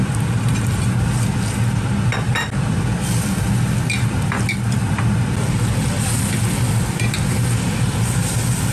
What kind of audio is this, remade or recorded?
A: recorded